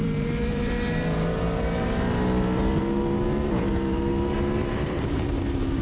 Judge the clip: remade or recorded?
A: remade